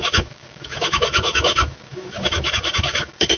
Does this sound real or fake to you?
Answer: fake